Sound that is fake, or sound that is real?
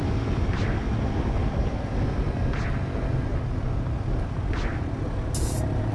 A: real